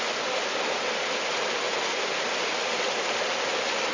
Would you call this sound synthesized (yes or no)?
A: no